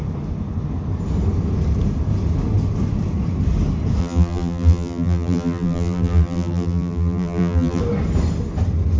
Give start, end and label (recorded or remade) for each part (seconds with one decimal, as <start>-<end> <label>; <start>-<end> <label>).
0.0-4.0 recorded; 4.0-7.8 remade; 7.8-9.0 recorded